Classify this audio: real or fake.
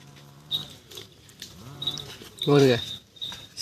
fake